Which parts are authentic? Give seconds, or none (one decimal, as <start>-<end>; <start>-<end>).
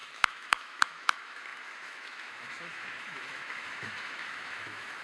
none